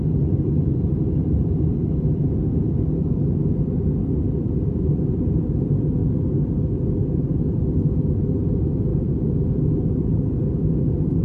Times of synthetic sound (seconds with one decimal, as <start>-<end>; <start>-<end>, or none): none